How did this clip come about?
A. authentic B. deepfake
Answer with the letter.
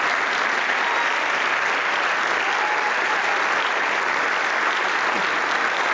A